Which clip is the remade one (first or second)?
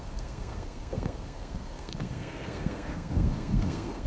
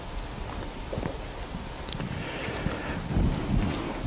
first